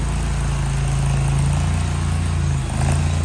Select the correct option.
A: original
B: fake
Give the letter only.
A